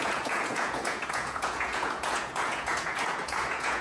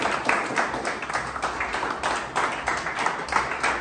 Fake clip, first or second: first